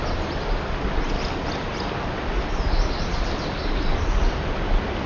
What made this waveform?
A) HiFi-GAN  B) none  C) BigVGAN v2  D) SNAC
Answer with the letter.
B